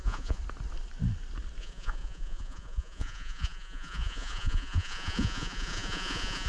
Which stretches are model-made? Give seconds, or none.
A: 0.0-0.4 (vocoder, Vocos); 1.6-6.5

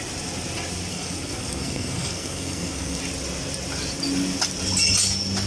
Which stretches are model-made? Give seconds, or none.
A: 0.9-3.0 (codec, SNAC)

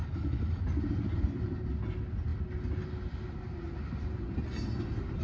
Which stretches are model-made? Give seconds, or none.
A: 0.0-0.6 (codec, DAC)